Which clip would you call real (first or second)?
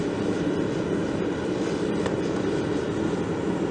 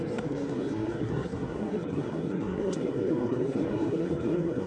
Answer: first